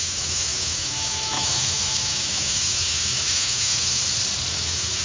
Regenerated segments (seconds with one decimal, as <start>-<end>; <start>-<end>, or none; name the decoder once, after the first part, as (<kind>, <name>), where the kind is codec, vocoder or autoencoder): 0.0-4.0 (autoencoder, DAC-VAE); 4.5-5.0